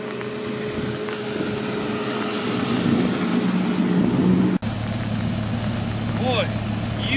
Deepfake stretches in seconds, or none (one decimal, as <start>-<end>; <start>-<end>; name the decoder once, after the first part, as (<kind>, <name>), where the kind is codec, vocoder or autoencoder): none